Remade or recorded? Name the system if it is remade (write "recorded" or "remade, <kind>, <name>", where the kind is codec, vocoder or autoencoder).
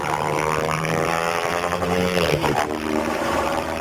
remade, vocoder, BigVGAN v2